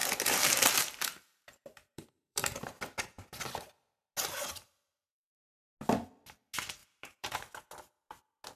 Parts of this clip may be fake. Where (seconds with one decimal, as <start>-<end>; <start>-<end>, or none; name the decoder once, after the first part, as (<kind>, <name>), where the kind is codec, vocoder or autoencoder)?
0.0-2.8 (vocoder, BigVGAN v2); 6.8-7.3